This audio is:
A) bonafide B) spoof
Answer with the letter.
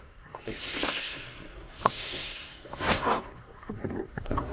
B